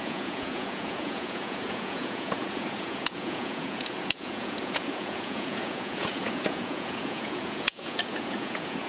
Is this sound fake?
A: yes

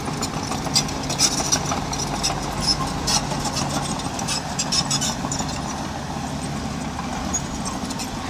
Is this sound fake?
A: no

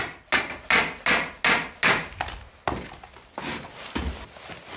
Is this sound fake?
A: no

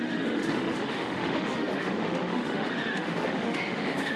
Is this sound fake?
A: yes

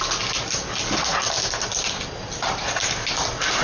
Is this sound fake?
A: no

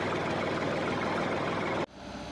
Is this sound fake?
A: no